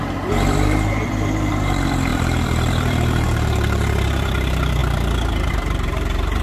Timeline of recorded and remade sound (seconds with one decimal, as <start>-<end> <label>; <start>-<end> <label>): 0.0-6.4 remade